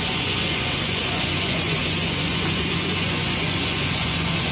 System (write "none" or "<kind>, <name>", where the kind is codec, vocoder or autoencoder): vocoder, Vocos